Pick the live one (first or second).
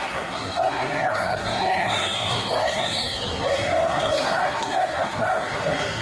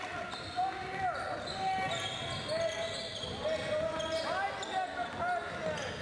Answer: second